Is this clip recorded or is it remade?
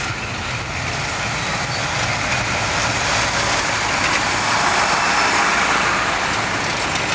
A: recorded